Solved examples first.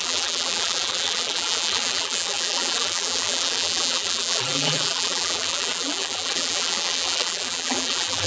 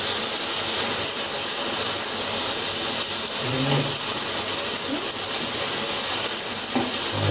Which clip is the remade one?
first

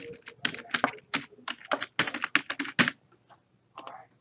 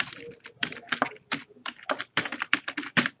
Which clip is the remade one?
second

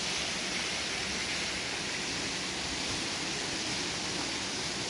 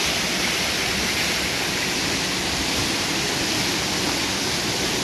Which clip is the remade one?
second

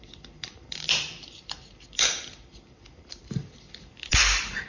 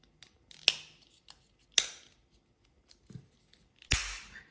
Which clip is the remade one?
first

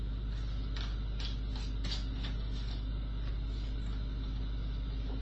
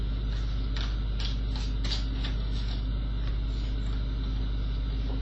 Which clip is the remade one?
second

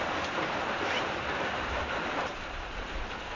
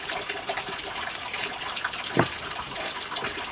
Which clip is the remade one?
first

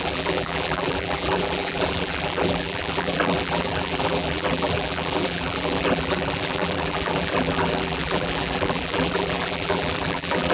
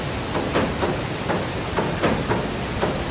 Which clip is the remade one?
first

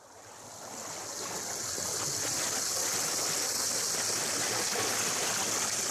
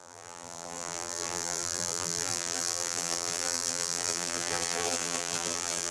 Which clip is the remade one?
second